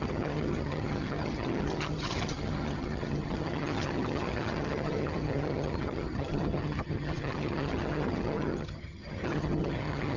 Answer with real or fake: fake